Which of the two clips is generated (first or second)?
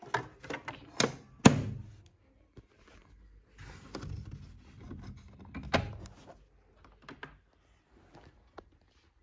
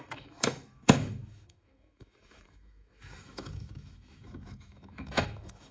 second